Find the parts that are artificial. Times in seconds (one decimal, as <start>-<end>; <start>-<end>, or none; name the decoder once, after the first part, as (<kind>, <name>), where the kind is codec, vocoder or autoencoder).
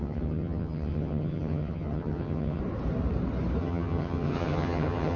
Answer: 0.0-2.6 (vocoder, HiFi-GAN); 3.6-5.2